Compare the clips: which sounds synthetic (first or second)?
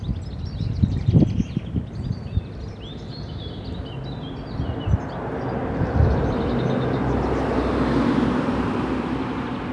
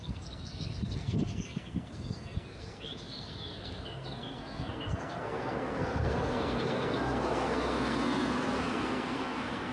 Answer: second